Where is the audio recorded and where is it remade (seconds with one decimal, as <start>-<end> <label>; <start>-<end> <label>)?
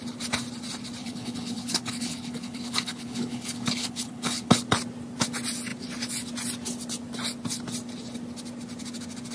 0.0-1.0 recorded; 1.0-4.5 remade; 4.5-9.3 recorded